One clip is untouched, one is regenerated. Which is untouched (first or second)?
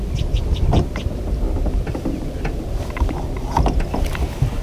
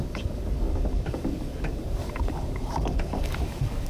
first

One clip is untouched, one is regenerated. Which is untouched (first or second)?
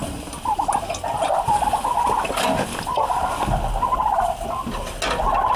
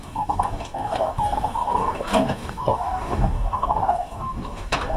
first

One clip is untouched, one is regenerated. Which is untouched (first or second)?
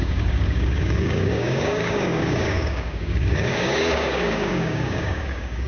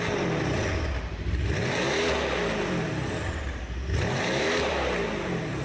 second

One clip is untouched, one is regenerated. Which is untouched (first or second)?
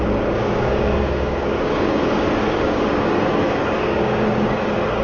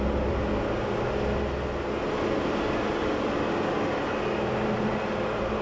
second